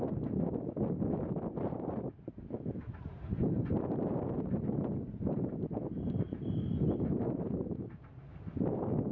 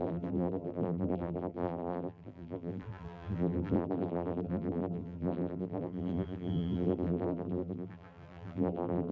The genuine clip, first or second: first